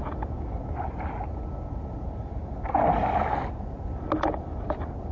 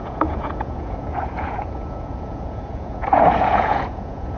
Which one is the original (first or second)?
first